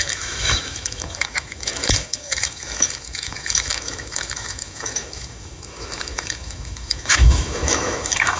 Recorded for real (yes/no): no